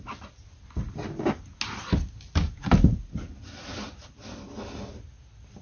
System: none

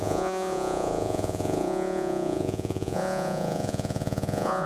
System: vocoder, Vocos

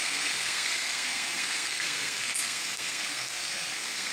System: codec, SNAC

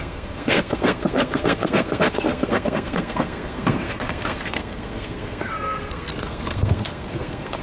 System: codec, SNAC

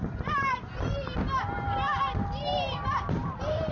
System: none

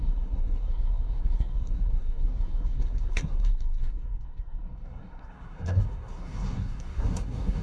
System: codec, SNAC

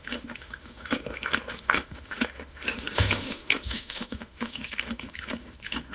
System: autoencoder, DAC-VAE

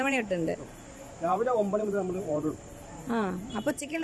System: vocoder, BigVGAN v2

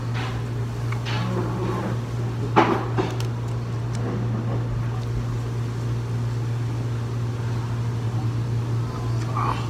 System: none